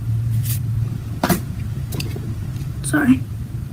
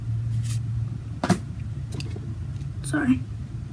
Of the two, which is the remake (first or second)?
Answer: first